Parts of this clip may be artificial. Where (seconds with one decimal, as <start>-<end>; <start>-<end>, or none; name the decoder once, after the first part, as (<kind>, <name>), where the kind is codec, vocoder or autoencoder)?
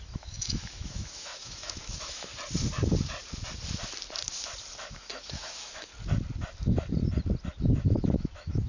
0.0-2.3 (autoencoder, DAC-VAE); 4.9-5.9; 7.6-8.7